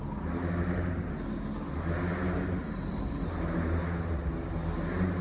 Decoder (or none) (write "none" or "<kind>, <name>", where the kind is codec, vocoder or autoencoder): none